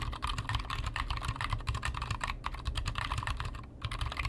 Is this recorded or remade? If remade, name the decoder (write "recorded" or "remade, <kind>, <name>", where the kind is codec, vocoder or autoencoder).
recorded